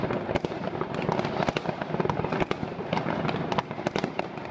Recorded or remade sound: recorded